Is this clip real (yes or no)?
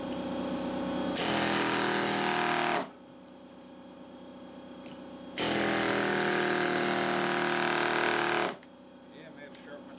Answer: yes